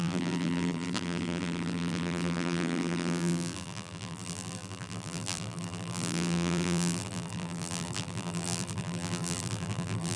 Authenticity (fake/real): fake